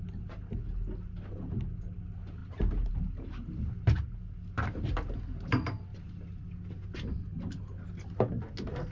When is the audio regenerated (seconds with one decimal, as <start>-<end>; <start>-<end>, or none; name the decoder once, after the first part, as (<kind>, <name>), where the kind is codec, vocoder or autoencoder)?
2.4-2.9 (vocoder, BigVGAN v2)